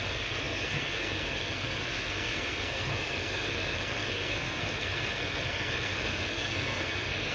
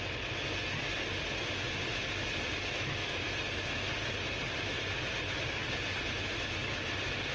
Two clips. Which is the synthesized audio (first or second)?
first